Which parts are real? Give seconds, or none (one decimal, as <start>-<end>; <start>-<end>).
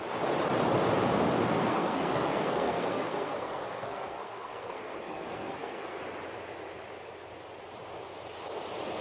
0.0-1.5; 6.0-9.0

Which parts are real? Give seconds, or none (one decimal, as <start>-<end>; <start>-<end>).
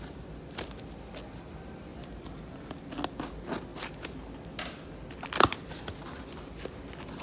0.0-1.9; 2.9-7.2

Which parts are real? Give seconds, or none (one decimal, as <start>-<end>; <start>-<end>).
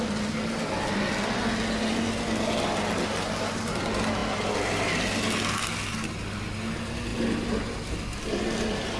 0.0-9.0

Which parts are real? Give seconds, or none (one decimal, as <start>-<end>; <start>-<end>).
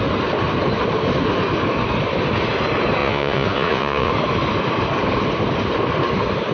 0.0-3.0; 4.1-6.5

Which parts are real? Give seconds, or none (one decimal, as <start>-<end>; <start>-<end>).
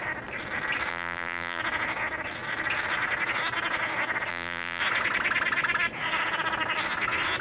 0.0-0.9; 1.6-4.3; 4.8-7.4